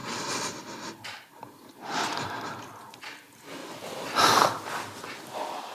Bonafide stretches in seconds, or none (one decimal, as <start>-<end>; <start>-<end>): 3.0-3.6; 5.2-5.7